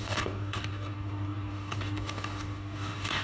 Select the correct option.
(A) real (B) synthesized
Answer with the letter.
B